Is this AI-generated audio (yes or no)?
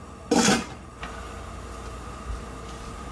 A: no